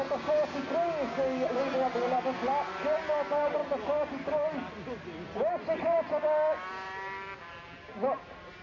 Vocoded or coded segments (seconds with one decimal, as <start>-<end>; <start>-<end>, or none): none